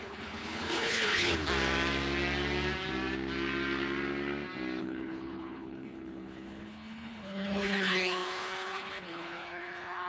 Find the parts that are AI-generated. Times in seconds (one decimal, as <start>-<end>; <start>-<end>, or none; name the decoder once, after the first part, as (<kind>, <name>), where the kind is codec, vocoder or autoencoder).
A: 0.0-1.4 (codec, HILCodec); 4.8-10.1